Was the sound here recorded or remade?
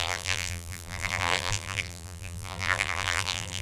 remade